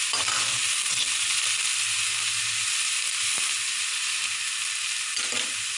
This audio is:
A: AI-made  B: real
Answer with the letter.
B